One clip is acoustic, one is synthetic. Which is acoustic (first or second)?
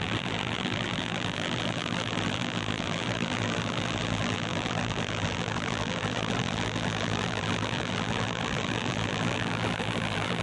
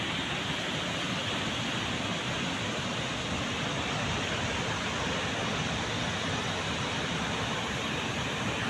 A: second